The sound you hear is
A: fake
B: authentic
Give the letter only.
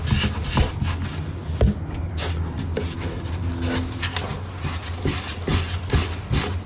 B